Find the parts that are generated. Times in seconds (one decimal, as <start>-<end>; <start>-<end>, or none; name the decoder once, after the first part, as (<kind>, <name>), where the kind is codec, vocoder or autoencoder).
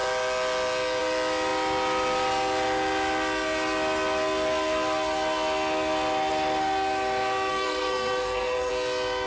7.5-8.7 (codec, SNAC)